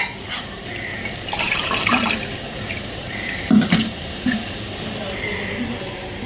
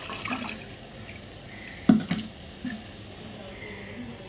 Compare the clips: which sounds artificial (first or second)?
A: first